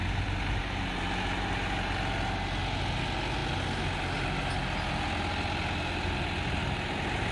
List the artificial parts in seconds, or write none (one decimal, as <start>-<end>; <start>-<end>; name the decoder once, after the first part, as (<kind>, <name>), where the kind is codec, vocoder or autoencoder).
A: none